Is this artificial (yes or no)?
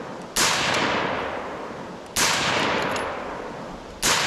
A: no